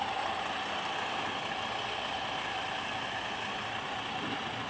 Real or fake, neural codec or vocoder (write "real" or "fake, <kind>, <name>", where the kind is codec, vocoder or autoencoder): real